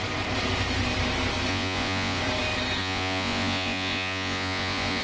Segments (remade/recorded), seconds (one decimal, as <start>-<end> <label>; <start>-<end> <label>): 0.0-1.5 recorded; 1.5-2.2 remade; 2.2-2.8 recorded; 2.8-5.0 remade